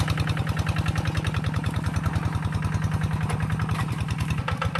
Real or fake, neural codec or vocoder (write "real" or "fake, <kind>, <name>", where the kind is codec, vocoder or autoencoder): real